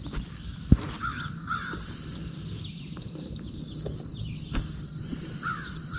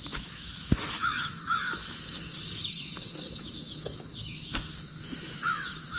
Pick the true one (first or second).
first